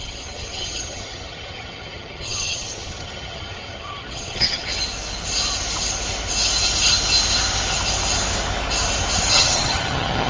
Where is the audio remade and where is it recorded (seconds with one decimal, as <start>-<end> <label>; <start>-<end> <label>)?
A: 0.0-4.7 remade; 4.7-9.3 recorded; 9.3-10.3 remade